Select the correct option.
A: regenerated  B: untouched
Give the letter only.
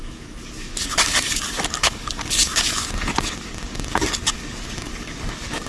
A